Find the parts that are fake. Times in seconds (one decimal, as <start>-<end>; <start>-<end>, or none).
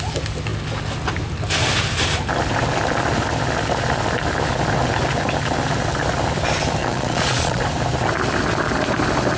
6.8-7.6